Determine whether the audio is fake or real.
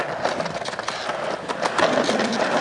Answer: real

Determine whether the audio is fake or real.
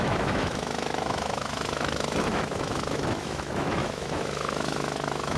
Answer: fake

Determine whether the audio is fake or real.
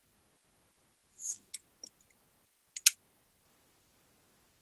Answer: real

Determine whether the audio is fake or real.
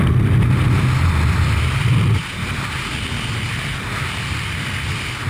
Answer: real